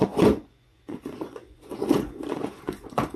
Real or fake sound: fake